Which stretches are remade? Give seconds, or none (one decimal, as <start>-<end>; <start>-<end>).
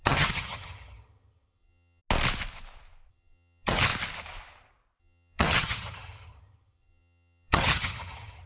0.0-2.0; 3.1-3.9; 5.0-8.5